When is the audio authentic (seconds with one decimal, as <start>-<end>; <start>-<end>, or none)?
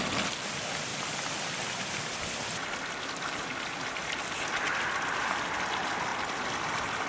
0.0-7.1